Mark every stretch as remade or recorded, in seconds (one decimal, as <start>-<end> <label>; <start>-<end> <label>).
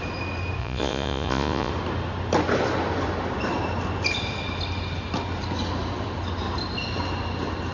0.0-0.6 recorded; 0.6-1.7 remade; 1.7-7.7 recorded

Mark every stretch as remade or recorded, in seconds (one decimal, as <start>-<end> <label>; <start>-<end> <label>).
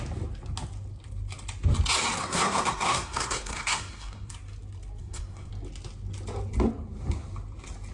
0.0-2.2 recorded; 2.2-4.3 remade; 4.3-5.0 recorded; 5.0-5.5 remade; 5.5-7.9 recorded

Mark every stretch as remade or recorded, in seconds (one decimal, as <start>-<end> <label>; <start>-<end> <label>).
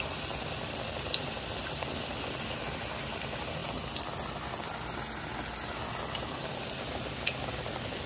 0.0-8.1 recorded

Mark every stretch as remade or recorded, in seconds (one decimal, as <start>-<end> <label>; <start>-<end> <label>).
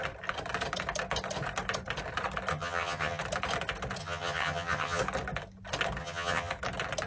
0.0-2.5 recorded; 2.5-3.2 remade; 3.2-4.0 recorded; 4.0-5.0 remade; 5.0-6.0 recorded; 6.0-6.5 remade; 6.5-7.1 recorded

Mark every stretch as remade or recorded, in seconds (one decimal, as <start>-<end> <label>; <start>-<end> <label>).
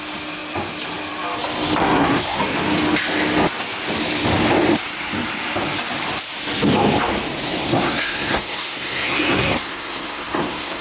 0.0-1.8 recorded; 1.8-2.4 remade; 2.4-7.6 recorded; 7.6-10.8 remade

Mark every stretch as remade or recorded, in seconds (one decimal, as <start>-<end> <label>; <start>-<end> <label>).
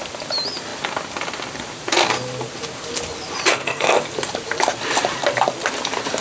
0.0-3.5 recorded; 3.5-4.0 remade; 4.0-6.2 recorded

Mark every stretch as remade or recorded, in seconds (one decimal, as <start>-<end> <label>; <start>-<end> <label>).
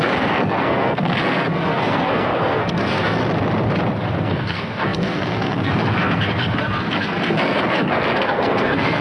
0.0-3.2 remade; 3.2-4.2 recorded; 4.2-9.0 remade